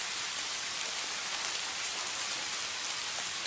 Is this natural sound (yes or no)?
yes